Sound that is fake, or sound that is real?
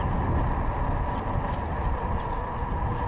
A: real